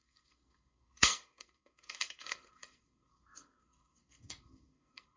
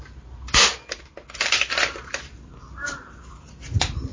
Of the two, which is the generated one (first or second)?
first